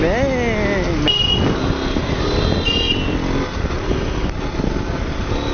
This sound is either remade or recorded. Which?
recorded